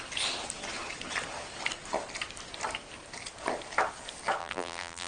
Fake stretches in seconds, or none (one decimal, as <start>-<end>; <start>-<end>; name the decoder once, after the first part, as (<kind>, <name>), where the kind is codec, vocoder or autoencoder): 4.4-5.1 (vocoder, BigVGAN v2)